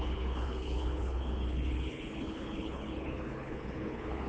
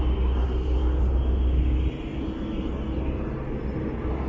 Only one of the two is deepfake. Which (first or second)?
first